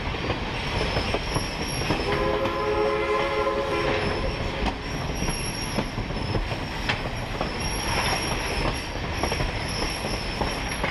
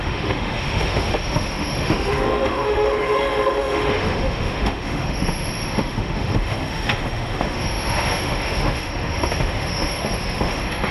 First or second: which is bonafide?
first